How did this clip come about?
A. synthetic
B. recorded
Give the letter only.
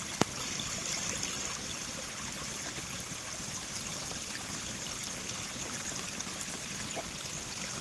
B